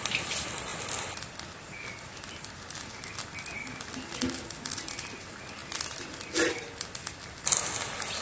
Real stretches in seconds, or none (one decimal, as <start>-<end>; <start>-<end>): 0.0-8.2

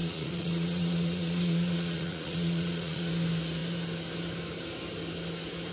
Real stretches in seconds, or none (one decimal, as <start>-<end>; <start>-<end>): 3.1-5.7

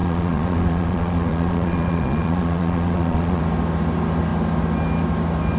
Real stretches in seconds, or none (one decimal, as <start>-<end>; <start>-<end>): 3.4-5.6

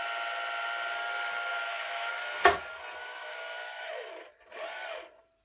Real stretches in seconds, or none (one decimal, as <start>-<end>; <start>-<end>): 0.0-1.5; 2.1-3.0; 4.1-5.4

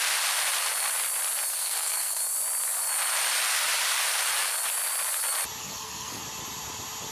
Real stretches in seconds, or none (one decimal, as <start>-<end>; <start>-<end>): 0.0-1.5; 2.2-5.6; 6.2-7.1

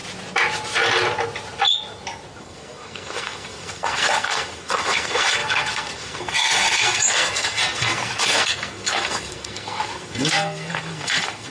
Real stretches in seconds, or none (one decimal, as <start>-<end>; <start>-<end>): 0.0-2.4

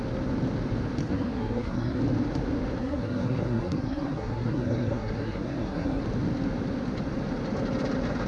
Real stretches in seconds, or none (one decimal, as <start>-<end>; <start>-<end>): 0.0-1.0; 2.0-2.8; 6.0-8.3

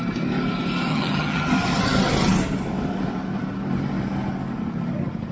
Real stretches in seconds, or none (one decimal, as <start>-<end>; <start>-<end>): 0.0-0.9; 1.5-5.3